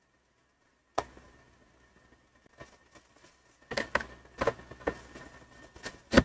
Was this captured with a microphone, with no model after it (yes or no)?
yes